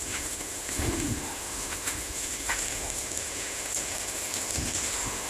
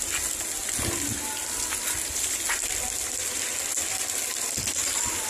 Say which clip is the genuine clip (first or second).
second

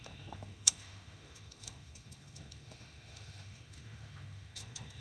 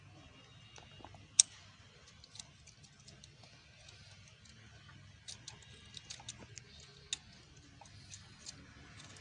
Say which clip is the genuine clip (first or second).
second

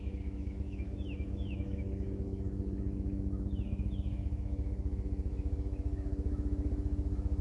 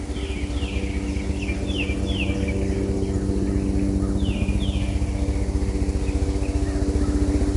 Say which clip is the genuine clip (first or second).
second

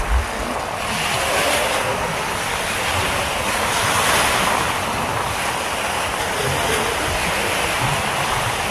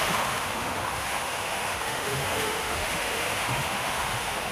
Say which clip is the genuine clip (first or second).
first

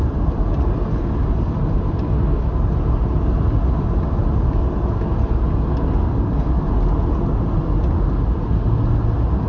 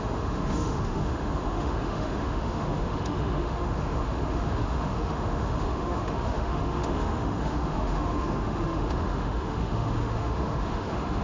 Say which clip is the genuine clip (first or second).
first